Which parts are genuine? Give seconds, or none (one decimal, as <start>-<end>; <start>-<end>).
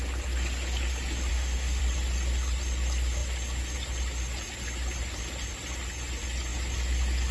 0.0-1.3; 1.8-7.3